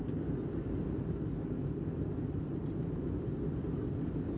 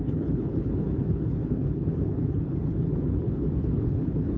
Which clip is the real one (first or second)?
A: first